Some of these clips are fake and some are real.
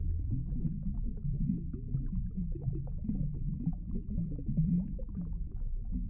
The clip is fake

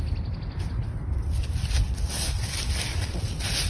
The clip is real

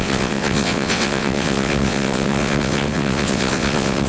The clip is fake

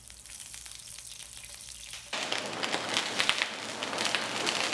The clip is real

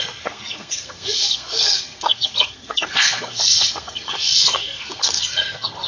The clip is fake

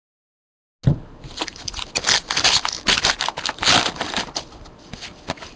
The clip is real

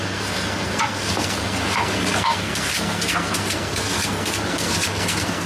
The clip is fake